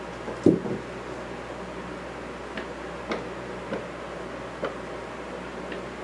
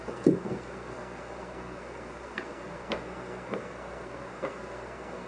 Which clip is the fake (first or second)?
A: second